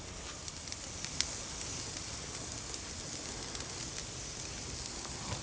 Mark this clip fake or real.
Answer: real